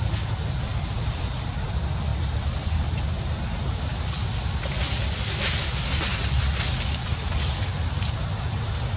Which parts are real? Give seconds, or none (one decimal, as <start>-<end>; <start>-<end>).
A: 0.0-0.7; 1.7-9.0